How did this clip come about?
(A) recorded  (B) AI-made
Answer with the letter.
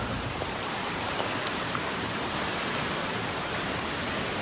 B